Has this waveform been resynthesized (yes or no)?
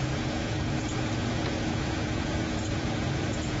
yes